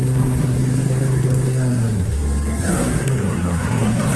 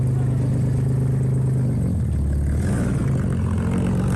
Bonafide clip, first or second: second